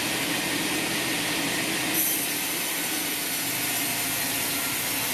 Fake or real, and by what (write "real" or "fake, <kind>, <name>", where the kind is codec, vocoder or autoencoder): real